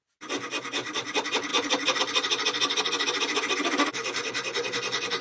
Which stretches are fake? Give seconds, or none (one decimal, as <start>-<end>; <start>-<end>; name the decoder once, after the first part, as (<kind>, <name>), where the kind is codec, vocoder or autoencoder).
1.5-2.0 (vocoder, BigVGAN v2); 3.9-4.6